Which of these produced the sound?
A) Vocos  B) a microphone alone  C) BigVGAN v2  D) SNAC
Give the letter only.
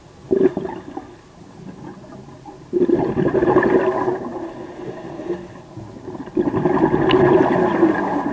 B